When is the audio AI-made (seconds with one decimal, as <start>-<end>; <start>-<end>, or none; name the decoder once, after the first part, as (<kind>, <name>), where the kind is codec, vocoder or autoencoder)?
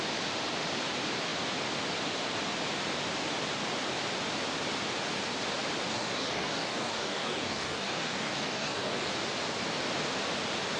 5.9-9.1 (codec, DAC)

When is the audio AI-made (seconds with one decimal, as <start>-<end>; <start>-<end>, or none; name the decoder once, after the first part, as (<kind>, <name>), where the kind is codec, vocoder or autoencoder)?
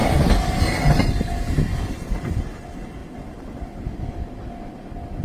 none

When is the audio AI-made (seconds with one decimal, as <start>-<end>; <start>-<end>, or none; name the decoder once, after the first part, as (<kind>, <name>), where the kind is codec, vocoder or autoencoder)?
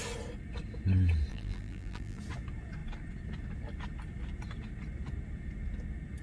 1.3-2.2 (vocoder, BigVGAN v2)